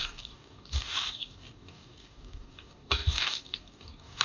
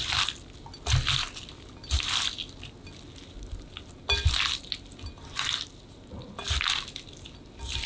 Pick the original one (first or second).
second